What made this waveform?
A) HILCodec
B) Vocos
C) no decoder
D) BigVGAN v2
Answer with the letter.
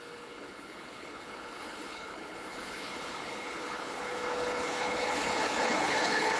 A